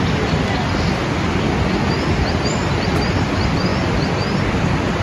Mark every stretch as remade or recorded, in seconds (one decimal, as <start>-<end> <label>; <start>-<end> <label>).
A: 0.0-5.0 recorded